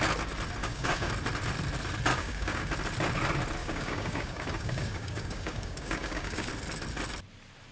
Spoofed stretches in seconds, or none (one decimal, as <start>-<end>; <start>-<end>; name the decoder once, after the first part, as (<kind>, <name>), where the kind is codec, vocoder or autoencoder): 0.6-1.1 (codec, DAC); 2.1-2.7; 3.6-6.5